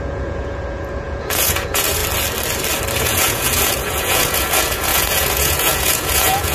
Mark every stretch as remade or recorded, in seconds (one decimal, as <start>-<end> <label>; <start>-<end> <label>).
0.0-2.0 remade; 2.0-3.0 recorded; 3.0-6.5 remade